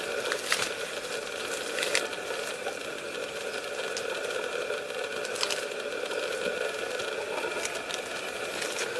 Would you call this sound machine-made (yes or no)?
no